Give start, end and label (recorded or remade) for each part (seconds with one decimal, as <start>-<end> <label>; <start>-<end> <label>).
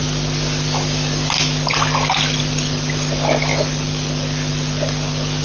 0.0-5.4 recorded